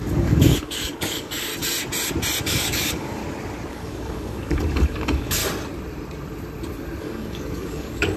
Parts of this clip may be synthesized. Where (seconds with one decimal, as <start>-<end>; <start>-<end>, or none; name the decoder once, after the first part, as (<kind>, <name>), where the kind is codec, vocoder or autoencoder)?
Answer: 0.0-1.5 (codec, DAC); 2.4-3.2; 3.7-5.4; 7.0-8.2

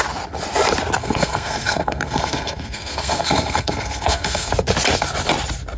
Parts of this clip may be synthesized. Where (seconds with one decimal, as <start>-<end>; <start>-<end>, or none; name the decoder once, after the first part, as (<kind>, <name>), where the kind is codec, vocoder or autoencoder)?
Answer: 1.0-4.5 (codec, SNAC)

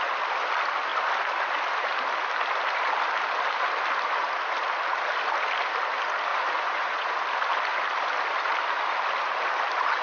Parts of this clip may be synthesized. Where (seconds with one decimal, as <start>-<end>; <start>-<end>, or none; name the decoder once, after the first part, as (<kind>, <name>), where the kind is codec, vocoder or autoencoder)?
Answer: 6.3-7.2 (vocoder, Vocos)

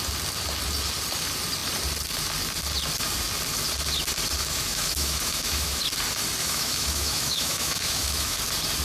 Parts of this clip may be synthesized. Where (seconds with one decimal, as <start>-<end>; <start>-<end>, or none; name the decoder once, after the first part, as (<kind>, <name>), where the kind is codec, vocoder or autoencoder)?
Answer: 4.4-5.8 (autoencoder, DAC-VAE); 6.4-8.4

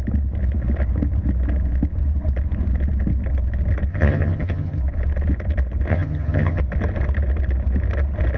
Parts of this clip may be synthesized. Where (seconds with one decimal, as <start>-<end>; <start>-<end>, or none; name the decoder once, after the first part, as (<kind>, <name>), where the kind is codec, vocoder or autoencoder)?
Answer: 3.9-4.8 (vocoder, HiFi-GAN); 5.9-6.6

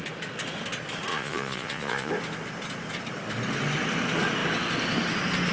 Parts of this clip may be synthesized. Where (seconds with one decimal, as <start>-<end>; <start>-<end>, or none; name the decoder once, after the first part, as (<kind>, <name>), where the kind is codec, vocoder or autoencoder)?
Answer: 1.1-2.1 (vocoder, Vocos)